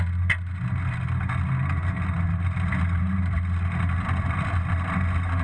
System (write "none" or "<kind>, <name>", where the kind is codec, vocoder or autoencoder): none